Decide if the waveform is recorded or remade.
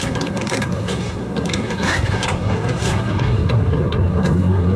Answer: remade